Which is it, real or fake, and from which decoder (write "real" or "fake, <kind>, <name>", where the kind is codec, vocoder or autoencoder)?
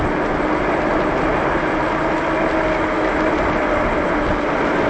real